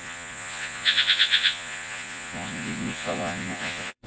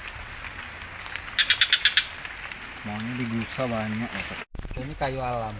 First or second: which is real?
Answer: second